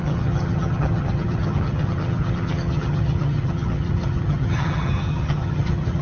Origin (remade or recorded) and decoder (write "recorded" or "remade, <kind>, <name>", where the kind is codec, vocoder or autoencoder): remade, vocoder, HiFi-GAN